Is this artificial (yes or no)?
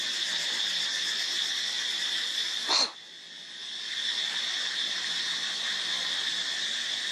no